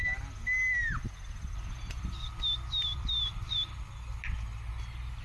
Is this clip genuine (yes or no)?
yes